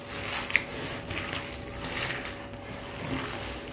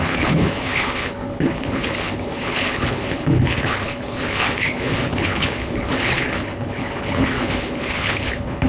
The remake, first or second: second